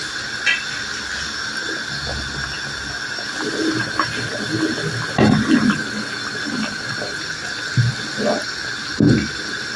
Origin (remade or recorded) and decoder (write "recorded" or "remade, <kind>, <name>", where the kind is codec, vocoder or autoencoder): recorded